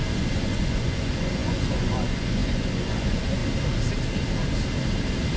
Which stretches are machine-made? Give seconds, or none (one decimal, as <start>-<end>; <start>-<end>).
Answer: 0.0-3.4